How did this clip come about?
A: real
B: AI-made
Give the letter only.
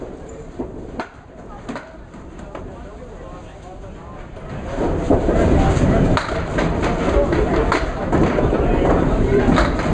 A